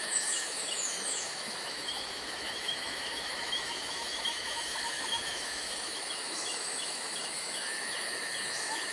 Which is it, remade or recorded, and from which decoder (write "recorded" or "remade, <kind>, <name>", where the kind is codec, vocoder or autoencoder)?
remade, autoencoder, DAC-VAE